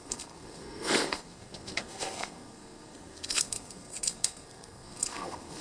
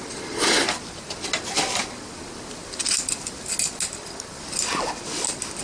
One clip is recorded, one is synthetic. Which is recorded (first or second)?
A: second